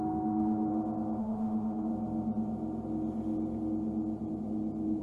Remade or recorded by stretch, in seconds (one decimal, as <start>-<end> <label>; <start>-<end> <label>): 0.0-0.7 remade; 0.7-1.2 recorded; 1.2-1.9 remade; 1.9-5.0 recorded